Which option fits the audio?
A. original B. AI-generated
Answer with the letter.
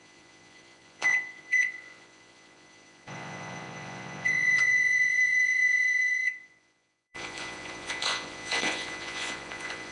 B